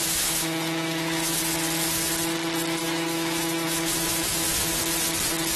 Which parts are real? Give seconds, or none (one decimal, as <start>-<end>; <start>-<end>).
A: 1.4-2.8; 4.8-5.6